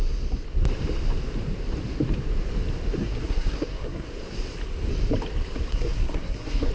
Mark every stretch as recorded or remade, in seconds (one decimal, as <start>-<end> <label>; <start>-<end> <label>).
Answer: 0.0-3.0 recorded; 3.0-4.1 remade; 4.1-5.7 recorded; 5.7-6.7 remade